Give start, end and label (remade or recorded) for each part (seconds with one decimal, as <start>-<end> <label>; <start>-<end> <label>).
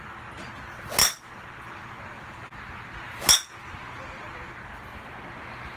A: 0.0-5.8 recorded